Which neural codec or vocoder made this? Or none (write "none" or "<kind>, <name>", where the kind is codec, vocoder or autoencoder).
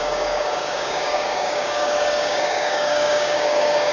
codec, DAC